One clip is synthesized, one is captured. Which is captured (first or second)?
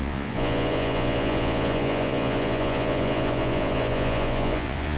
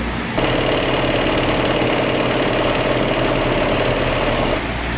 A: second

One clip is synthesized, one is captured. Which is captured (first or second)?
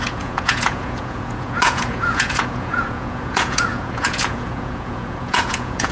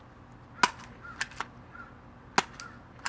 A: second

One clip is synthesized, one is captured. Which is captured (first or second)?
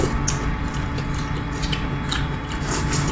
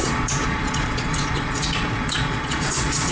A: first